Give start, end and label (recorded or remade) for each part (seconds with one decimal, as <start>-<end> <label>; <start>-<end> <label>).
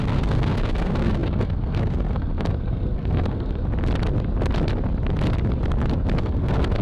0.0-3.6 remade; 3.6-6.2 recorded; 6.2-6.8 remade